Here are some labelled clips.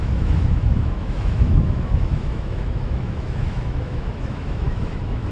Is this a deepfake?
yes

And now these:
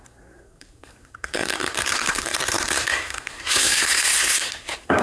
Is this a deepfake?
yes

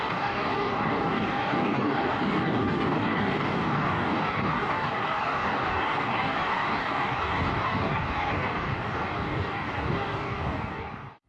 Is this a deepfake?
yes